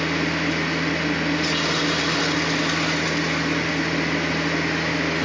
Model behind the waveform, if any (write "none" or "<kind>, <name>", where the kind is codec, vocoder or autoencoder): none